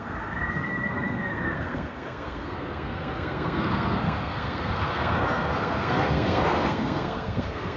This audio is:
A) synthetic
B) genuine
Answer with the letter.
A